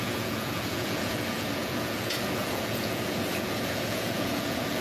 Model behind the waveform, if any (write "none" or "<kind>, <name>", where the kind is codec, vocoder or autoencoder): vocoder, Vocos